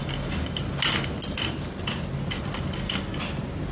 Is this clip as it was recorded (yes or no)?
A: yes